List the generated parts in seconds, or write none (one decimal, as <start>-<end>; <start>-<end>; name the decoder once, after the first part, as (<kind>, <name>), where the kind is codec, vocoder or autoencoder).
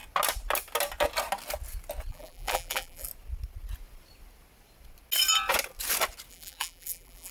2.1-3.1 (vocoder, BigVGAN v2); 6.3-7.3